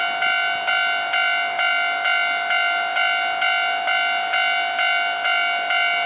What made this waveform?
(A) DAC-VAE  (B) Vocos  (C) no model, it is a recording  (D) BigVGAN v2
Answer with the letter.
C